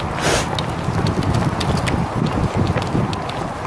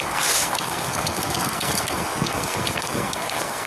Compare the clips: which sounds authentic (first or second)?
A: first